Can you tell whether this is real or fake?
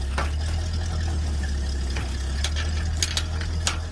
real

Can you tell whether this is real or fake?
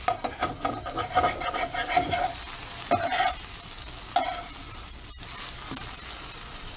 real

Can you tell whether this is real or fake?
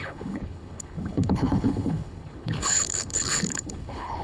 fake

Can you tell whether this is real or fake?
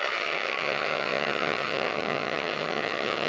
fake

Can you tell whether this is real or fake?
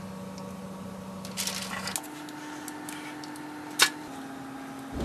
real